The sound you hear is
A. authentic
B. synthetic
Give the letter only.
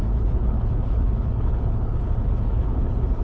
B